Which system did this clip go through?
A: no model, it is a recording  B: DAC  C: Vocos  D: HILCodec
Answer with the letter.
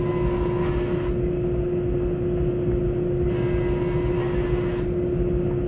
A